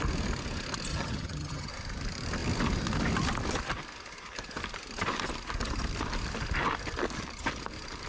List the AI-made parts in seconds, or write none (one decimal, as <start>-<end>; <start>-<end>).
0.9-1.7